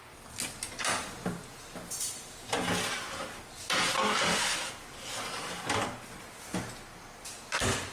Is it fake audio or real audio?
real